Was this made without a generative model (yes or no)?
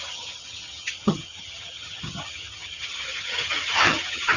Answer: no